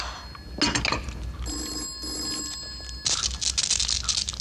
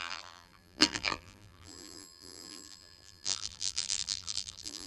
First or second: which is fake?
second